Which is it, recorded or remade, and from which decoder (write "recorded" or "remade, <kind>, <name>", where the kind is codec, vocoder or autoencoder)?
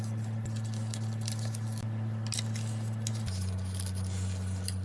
recorded